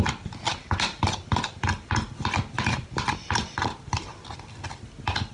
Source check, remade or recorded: recorded